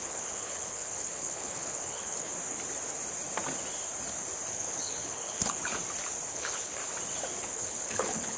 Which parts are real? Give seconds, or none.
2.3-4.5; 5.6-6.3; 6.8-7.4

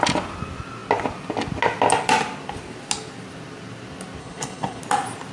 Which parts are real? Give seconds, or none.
0.0-4.2; 4.8-5.3

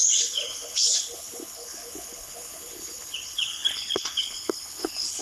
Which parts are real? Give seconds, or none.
none

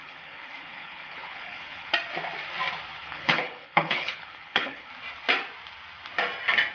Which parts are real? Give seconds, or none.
1.9-3.0; 4.9-6.7

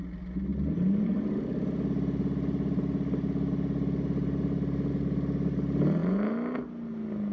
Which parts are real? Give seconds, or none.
0.0-7.3